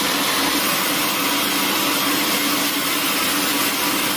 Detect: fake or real real